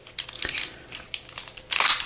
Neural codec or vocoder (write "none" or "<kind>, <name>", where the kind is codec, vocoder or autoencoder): none